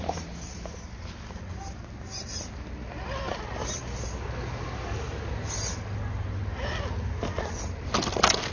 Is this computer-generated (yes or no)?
no